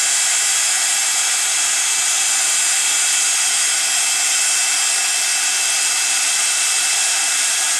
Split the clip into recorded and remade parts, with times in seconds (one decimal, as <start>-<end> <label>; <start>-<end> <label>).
0.0-7.8 recorded